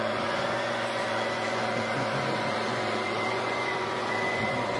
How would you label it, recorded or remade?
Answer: remade